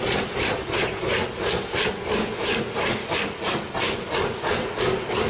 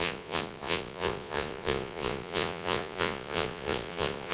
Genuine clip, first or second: first